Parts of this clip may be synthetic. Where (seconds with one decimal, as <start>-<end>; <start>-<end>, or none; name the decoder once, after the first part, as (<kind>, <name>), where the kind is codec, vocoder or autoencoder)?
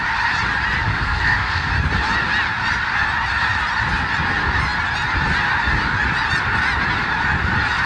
0.9-1.7 (codec, SNAC)